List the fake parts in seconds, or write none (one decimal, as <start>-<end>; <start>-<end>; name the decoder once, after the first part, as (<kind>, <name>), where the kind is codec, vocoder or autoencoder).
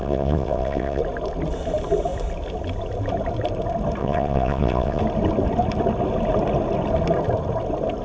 0.0-1.0 (vocoder, WaveNeXt); 4.0-5.0